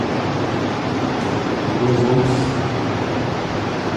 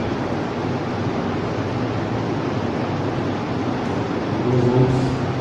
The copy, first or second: first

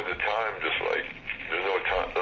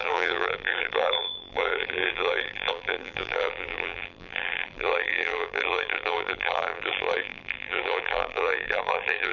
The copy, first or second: second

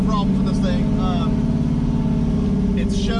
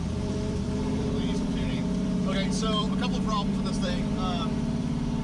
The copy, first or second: second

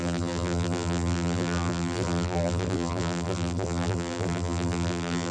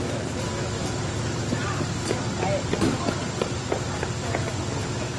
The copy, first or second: first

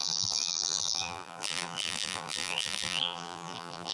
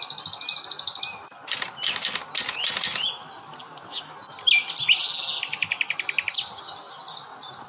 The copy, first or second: first